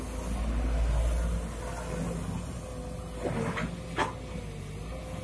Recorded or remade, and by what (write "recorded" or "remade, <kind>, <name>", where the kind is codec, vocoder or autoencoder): recorded